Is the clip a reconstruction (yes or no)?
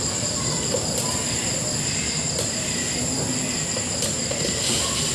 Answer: no